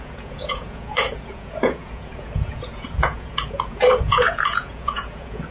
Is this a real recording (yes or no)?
no